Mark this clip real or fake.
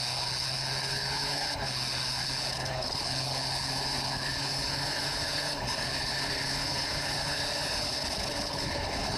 fake